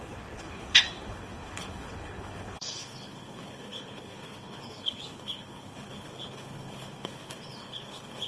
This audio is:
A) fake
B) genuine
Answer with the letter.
A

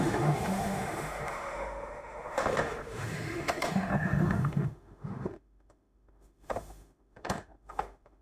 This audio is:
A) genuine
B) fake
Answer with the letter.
B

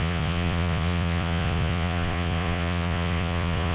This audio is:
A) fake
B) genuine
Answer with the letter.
A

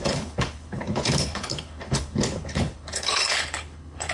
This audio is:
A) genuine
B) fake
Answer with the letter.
B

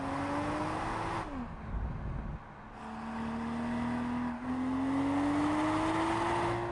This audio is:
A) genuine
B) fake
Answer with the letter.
A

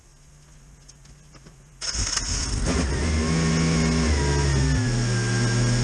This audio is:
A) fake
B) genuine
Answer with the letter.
B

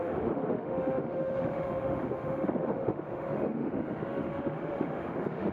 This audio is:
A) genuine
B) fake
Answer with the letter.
B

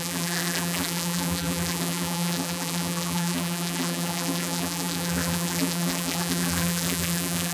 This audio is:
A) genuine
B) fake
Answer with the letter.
B